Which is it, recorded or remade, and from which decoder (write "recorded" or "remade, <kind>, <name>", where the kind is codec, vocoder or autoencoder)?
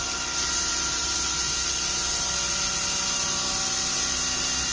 recorded